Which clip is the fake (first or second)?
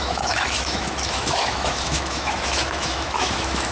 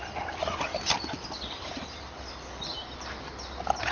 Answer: first